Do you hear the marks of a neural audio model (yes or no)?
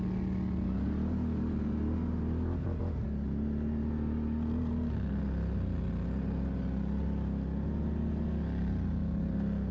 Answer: no